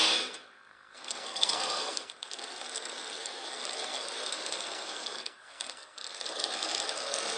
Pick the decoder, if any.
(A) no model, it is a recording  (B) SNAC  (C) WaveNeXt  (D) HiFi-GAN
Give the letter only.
B